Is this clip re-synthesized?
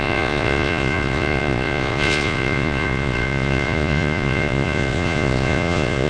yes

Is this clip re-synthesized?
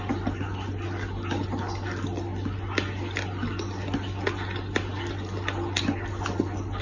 no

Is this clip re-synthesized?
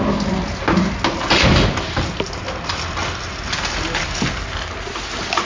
no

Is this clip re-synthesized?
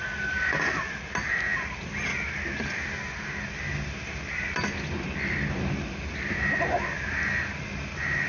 no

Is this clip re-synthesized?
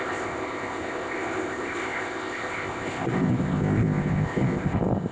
yes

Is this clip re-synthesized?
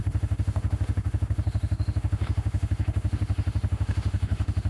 yes